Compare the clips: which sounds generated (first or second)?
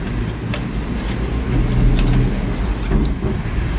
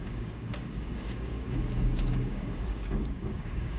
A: second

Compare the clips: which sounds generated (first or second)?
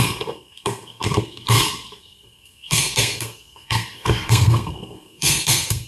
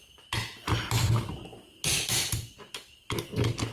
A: first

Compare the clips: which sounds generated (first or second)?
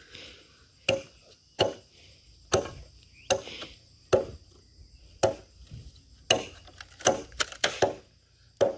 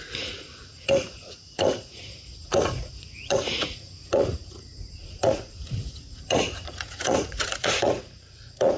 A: second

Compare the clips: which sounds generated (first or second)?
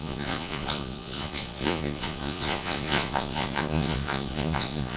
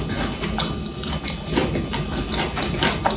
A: first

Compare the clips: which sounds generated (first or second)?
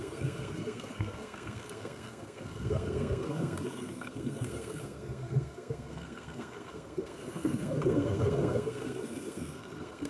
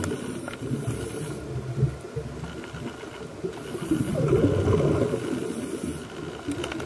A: first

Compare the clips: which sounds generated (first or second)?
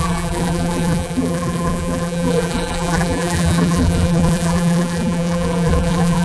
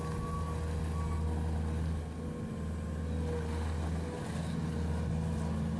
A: first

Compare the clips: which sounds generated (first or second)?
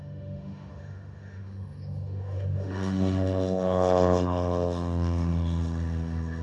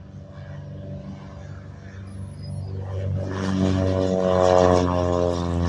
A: first